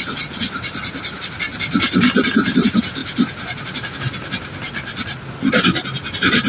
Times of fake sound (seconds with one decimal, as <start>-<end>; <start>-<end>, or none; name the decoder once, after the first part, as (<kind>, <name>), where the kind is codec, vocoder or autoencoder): none